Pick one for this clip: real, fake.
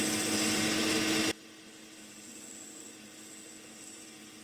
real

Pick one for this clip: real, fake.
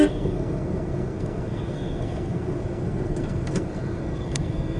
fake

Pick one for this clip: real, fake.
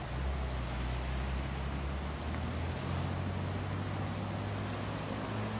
real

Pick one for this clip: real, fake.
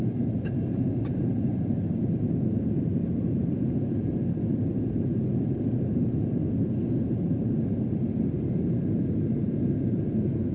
fake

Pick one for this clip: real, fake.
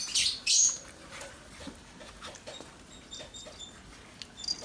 real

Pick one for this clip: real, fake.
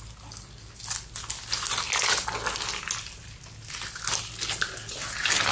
real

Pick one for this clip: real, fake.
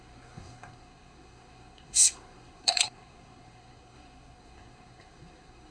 fake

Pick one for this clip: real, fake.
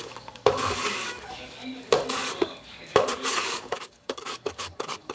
fake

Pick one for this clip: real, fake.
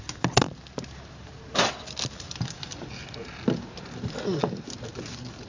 real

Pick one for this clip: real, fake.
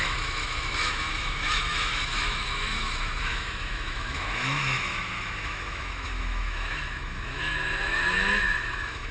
fake